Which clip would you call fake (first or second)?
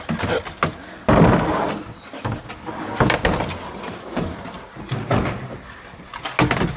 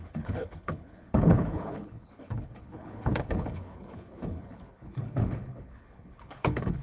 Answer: second